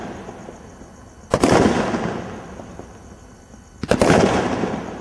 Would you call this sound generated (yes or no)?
no